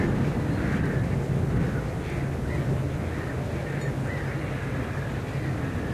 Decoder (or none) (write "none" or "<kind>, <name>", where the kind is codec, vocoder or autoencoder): none